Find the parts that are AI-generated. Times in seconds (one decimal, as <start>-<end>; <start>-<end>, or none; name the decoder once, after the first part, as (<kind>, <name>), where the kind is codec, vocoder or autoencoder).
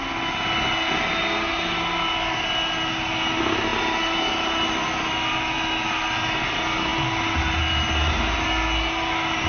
none